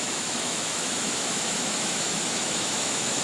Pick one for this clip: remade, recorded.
remade